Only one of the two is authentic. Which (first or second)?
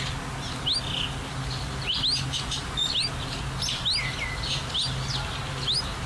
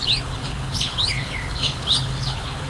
first